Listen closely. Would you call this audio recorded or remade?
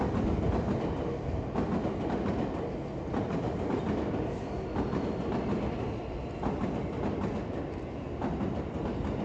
recorded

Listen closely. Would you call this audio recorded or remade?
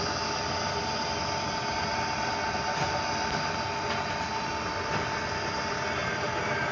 recorded